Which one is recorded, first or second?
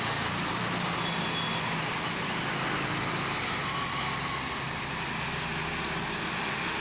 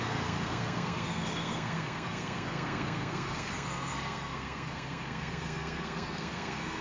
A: first